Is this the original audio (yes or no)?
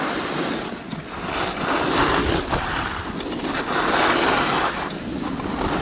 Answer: yes